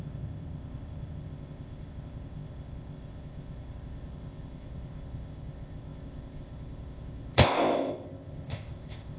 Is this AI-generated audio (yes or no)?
yes